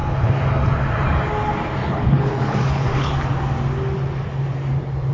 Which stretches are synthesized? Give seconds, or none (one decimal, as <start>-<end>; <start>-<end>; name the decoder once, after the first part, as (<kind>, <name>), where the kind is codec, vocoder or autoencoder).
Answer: 1.8-3.1 (codec, HILCodec)